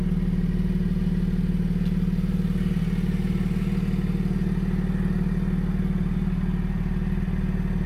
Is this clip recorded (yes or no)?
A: yes